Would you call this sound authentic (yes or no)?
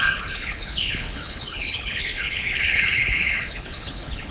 no